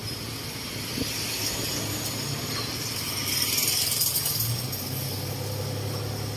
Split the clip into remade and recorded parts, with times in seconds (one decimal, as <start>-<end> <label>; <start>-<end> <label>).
0.0-6.4 recorded